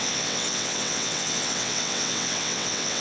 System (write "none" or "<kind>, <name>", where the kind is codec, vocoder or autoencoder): vocoder, WaveNeXt